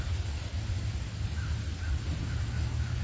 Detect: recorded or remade recorded